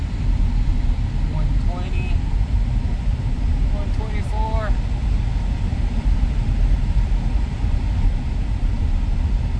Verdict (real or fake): real